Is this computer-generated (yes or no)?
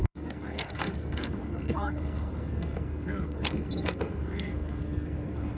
yes